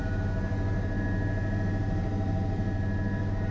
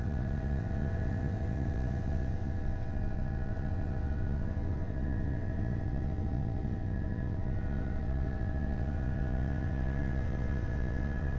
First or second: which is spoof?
second